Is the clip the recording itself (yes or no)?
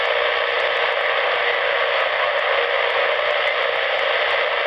yes